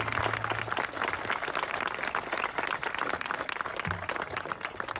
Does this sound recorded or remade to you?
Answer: recorded